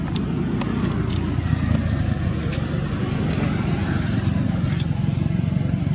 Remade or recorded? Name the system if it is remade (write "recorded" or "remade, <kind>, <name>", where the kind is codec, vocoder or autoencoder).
recorded